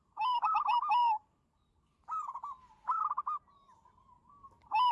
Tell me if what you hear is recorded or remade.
recorded